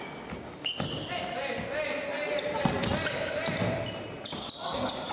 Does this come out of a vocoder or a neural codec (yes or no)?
no